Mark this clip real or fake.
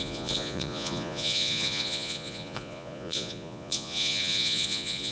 fake